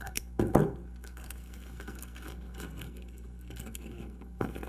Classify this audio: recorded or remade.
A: remade